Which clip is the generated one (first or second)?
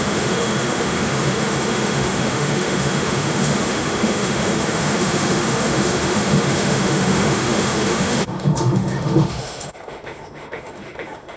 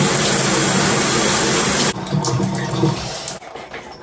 first